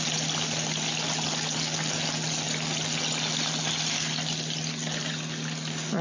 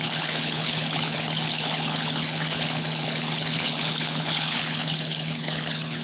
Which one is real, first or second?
first